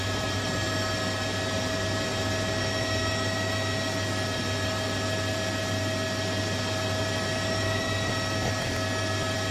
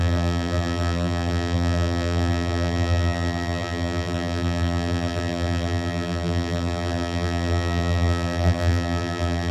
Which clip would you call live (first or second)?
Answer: first